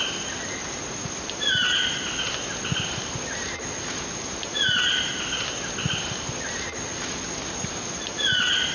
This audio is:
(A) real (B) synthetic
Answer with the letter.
A